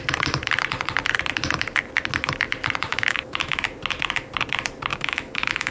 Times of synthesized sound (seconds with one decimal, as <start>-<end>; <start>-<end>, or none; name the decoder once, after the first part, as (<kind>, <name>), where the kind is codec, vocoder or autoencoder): 2.9-3.6 (autoencoder, DAC-VAE); 4.9-5.7